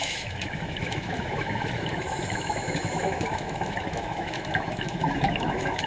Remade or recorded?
remade